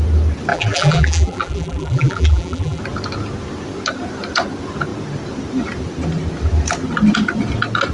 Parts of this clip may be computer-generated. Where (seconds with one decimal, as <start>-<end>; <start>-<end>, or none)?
0.5-2.8